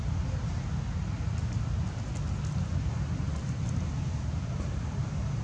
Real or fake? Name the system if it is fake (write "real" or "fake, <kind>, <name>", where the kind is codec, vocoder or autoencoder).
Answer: real